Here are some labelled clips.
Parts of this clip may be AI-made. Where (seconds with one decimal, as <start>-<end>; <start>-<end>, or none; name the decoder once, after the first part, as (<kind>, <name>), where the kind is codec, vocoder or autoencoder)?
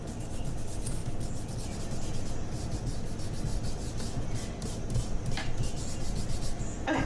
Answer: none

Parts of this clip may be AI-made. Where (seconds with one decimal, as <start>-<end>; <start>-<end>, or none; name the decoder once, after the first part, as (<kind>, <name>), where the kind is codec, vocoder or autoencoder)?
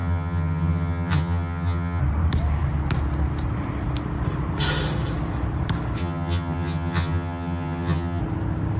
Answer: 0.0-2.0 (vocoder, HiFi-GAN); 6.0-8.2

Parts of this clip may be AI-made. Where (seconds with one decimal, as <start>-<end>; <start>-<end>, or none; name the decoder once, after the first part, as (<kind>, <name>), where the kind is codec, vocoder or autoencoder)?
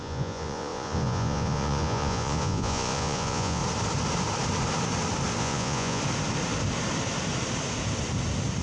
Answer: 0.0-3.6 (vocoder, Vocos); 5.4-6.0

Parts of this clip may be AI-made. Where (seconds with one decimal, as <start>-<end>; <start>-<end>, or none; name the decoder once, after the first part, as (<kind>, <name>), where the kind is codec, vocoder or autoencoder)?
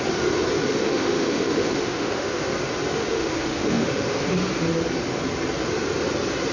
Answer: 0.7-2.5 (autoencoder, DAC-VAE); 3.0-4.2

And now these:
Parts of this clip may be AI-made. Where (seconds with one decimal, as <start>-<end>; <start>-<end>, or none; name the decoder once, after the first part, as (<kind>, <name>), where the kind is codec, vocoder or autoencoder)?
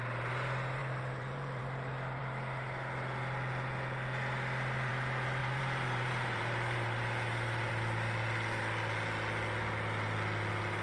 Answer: 0.8-1.6 (vocoder, BigVGAN v2); 5.4-7.7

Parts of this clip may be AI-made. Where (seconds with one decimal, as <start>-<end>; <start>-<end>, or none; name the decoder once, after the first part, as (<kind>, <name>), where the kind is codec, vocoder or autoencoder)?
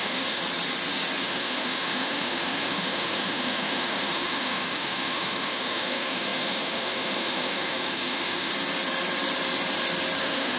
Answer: 0.0-0.4 (autoencoder, DAC-VAE); 1.2-8.5; 10.2-10.6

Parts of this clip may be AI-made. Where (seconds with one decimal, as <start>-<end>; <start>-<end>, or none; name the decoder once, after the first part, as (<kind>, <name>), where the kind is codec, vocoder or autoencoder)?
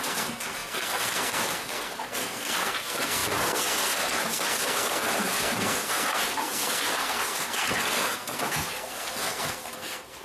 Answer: 0.0-10.2 (codec, SNAC)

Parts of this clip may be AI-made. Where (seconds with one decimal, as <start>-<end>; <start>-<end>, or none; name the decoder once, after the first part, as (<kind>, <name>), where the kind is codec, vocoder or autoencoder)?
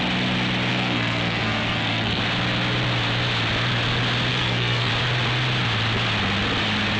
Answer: 0.7-2.2 (codec, SNAC); 4.3-4.9